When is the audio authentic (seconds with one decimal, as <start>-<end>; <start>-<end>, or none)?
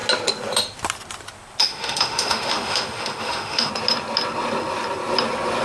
0.0-1.6; 3.7-5.6